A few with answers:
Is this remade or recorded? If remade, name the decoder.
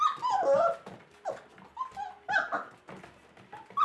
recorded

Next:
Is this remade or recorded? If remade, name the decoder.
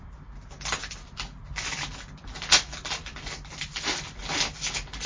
recorded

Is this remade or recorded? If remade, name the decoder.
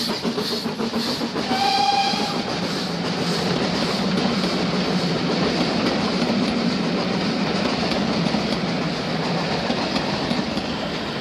recorded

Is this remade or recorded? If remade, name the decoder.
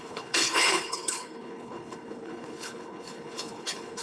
remade, codec, HILCodec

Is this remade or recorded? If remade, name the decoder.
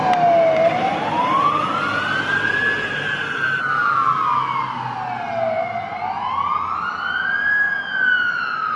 recorded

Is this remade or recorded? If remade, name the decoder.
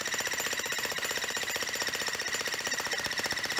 remade, vocoder, BigVGAN v2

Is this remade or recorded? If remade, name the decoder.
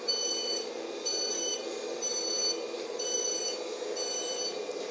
remade, vocoder, BigVGAN v2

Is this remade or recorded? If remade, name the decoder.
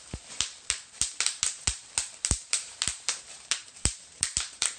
remade, vocoder, BigVGAN v2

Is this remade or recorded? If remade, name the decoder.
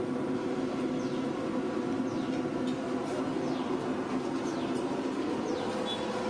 recorded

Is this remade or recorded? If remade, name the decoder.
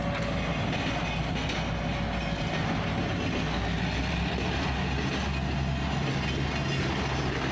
recorded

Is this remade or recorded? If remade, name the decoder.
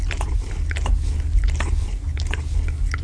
recorded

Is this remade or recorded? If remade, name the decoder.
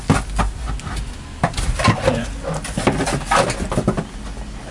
recorded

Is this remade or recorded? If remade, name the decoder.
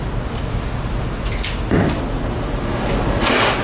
recorded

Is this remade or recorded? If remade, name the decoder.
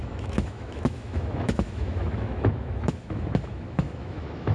remade, autoencoder, DAC-VAE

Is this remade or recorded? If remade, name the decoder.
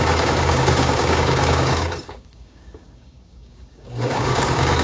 remade, codec, DAC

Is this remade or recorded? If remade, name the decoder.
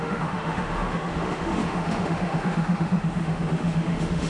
remade, autoencoder, DAC-VAE